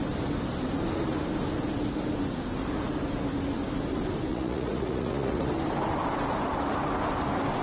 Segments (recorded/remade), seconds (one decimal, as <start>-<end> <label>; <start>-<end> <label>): 0.0-4.3 recorded; 4.3-5.5 remade; 5.5-7.6 recorded

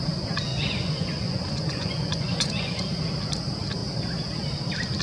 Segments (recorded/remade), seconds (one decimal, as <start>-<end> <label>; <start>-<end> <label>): 0.0-0.5 recorded; 0.5-2.8 remade; 2.8-5.0 recorded

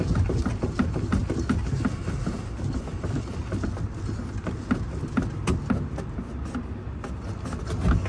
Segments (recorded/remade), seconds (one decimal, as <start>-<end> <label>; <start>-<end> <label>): 0.0-8.1 recorded

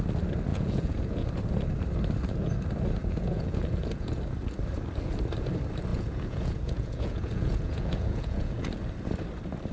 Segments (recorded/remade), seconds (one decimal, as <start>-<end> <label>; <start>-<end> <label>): 0.0-0.5 recorded; 0.5-1.3 remade; 1.3-3.0 recorded; 3.0-4.2 remade; 4.2-5.9 recorded; 5.9-8.8 remade; 8.8-9.7 recorded

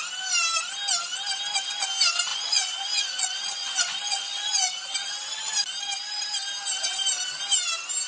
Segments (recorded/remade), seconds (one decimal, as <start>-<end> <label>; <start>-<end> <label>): 0.0-2.3 recorded; 2.3-5.5 remade; 5.5-8.1 recorded